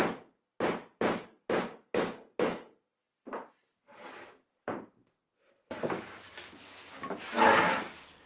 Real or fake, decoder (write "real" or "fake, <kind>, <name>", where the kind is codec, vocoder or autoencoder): real